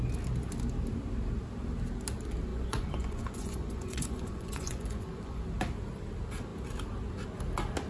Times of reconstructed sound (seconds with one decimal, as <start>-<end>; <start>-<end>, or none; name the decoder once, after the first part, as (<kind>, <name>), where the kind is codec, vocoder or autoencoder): 2.5-5.4 (vocoder, Vocos)